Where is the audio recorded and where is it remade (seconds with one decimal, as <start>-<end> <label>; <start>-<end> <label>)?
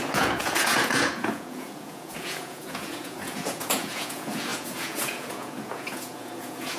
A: 0.0-6.8 remade